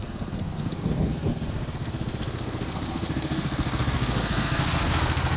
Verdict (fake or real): fake